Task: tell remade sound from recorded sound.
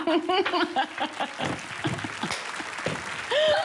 recorded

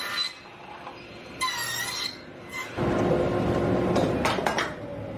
recorded